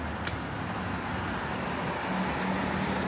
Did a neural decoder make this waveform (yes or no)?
no